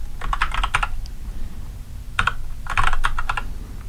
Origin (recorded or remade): recorded